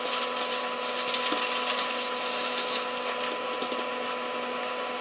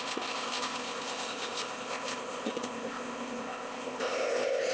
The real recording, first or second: first